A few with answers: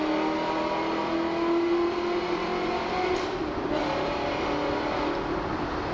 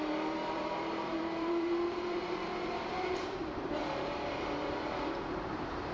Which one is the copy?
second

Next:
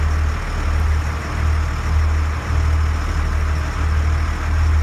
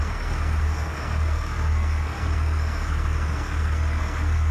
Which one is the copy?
second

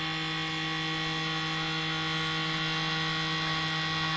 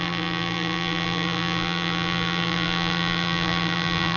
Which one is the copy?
second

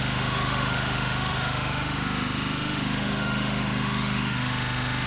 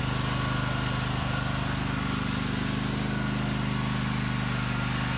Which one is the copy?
first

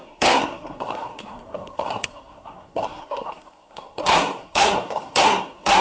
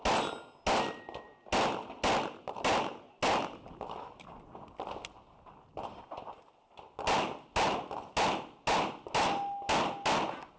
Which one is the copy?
first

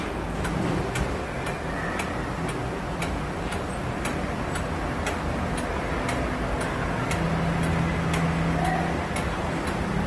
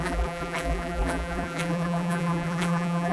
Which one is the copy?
second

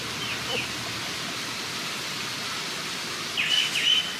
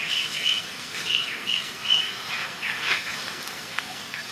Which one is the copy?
second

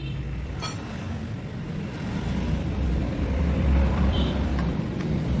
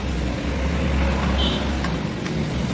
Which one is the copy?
first